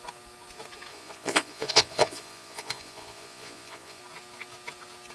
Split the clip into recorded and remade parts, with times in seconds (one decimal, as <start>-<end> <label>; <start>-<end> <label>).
0.0-0.9 recorded; 0.9-4.0 remade; 4.0-5.1 recorded